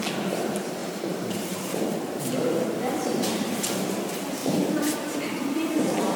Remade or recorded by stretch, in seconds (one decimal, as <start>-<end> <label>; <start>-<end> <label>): 0.0-0.8 recorded; 0.8-3.5 remade; 3.5-4.4 recorded; 4.4-5.7 remade; 5.7-6.2 recorded